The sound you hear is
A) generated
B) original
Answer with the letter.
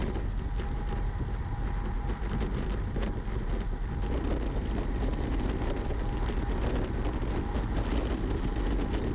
B